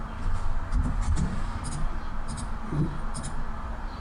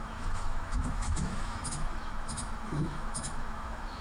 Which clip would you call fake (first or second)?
second